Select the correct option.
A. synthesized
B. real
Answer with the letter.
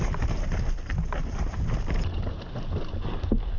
B